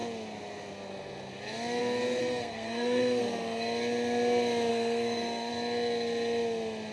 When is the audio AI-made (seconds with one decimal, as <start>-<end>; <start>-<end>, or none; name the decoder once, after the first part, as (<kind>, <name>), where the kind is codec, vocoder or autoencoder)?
2.2-3.2 (codec, SNAC); 4.7-5.5